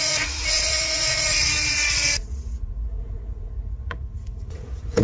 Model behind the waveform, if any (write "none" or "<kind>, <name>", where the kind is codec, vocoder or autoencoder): vocoder, Vocos